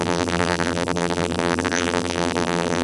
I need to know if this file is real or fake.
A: fake